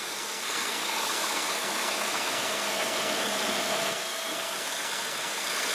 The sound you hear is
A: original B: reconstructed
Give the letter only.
B